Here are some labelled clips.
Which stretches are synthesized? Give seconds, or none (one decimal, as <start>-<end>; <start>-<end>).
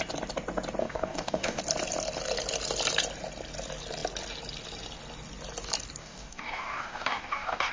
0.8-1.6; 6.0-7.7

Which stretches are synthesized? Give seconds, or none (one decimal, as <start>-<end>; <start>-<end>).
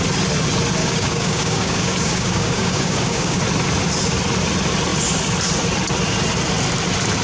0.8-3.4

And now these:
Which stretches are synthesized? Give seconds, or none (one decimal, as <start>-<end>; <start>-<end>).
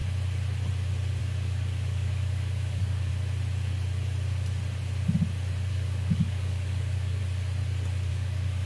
1.2-3.1; 5.7-7.2; 8.1-8.7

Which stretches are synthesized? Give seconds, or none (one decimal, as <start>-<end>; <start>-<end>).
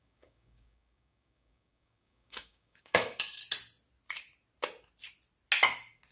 0.0-3.4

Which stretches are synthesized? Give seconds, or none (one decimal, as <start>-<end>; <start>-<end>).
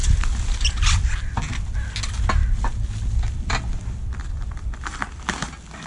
none